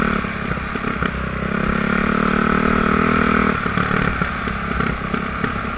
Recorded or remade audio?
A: recorded